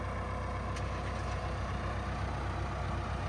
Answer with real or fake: real